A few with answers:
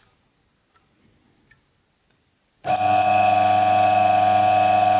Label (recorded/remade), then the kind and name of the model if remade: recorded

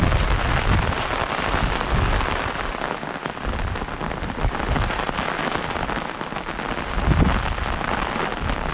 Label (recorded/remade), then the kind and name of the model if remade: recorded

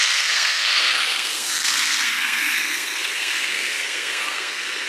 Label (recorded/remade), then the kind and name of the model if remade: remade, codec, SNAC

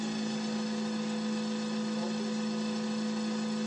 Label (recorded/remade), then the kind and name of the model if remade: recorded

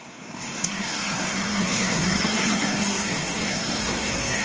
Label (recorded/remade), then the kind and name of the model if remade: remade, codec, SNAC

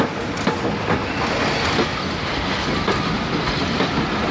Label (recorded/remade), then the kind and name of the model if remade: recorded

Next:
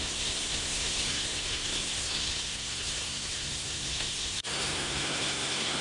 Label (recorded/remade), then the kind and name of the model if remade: remade, codec, SNAC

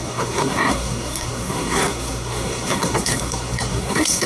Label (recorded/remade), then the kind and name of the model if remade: remade, codec, SNAC